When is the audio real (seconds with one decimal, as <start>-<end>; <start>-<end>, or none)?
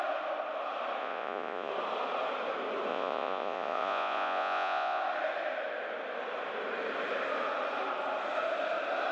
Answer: 0.0-1.0; 1.7-2.9; 5.0-9.1